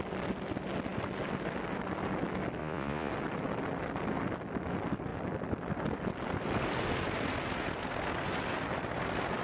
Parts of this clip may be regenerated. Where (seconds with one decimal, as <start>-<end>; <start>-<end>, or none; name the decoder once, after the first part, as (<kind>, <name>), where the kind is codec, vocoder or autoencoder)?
2.6-3.1 (vocoder, Vocos)